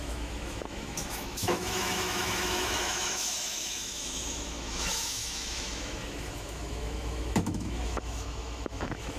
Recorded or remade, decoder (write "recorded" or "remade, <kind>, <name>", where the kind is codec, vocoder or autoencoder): remade, autoencoder, DAC-VAE